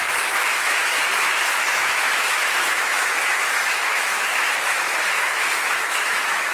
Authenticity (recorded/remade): remade